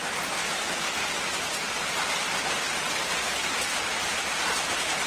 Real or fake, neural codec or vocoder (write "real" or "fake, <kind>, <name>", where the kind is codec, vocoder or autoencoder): real